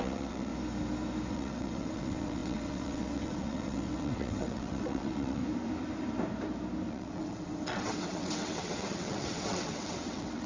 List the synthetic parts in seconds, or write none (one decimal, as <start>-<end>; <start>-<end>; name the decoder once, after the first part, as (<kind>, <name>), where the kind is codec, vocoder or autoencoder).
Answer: 0.0-0.5 (vocoder, WaveNeXt); 1.3-5.4; 6.9-10.5